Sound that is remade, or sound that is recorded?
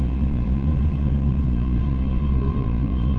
remade